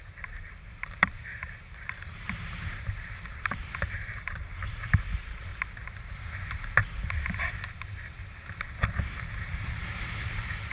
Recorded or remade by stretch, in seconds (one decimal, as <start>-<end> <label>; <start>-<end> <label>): 0.0-3.6 remade; 3.6-4.1 recorded; 4.1-5.5 remade; 5.5-9.2 recorded; 9.2-10.7 remade